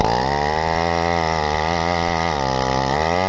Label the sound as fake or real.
real